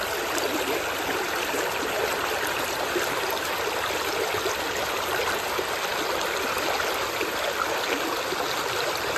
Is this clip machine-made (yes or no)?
no